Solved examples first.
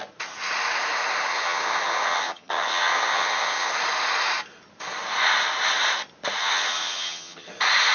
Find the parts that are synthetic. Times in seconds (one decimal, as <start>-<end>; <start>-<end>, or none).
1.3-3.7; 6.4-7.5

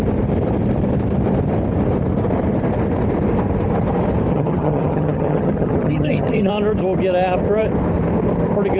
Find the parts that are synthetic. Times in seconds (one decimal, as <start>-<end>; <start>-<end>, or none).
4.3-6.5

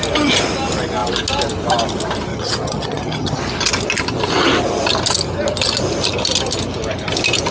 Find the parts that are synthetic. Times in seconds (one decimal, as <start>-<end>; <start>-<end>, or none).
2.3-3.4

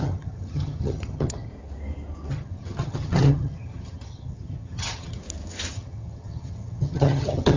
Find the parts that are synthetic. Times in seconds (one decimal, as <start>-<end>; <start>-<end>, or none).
0.0-1.5; 2.3-5.2; 5.7-7.6

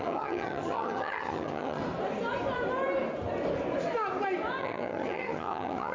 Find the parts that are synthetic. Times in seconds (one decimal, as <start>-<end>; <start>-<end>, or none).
0.0-1.8; 4.6-5.9

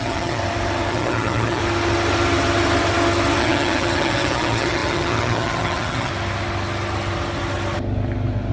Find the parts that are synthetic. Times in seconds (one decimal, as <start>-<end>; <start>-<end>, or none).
0.0-0.4; 0.9-1.6; 3.4-6.1

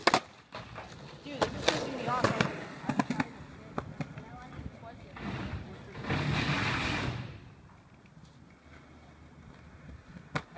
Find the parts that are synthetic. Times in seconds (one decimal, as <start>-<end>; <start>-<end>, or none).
none